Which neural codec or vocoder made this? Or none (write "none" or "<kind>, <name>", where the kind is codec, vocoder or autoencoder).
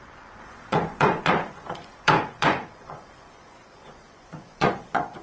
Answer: vocoder, Vocos